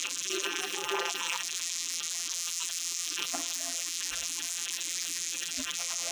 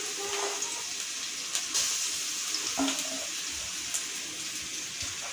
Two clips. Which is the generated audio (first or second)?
first